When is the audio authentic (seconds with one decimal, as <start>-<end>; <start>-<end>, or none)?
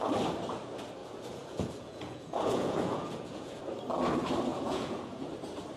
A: 0.0-1.0; 3.6-4.5; 5.3-5.8